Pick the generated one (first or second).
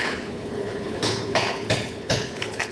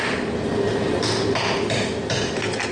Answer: first